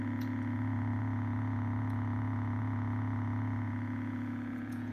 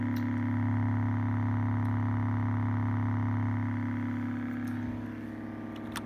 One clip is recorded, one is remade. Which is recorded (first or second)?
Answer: second